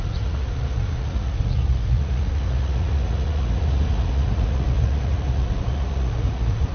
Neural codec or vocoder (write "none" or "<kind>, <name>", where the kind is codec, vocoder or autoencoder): vocoder, Vocos